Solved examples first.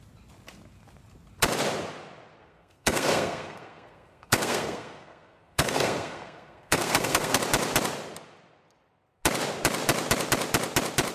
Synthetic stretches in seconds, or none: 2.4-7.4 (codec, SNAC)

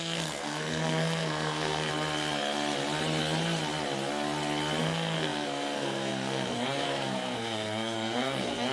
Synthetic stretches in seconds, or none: 0.0-1.9 (codec, SNAC); 4.8-8.7

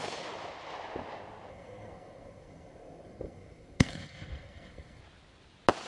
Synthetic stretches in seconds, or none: 1.5-5.0 (codec, SNAC)

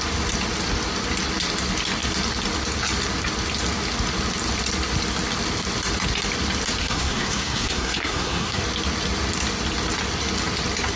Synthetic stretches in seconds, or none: 6.8-8.6 (codec, SNAC)

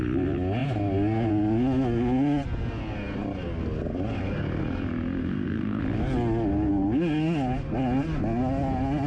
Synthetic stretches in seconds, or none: 5.2-5.8 (codec, SNAC)

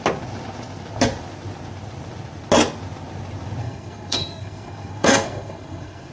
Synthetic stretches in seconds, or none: 3.6-6.1 (codec, SNAC)

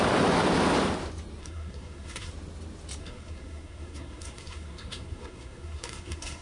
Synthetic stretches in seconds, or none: 1.4-2.3 (codec, SNAC); 3.0-6.4

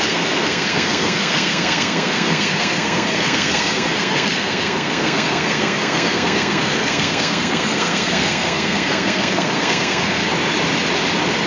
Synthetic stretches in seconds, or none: 0.0-10.2 (codec, SNAC)